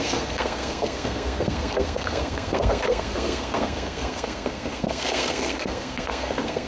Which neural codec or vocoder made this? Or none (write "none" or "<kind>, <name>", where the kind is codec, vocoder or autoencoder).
codec, SNAC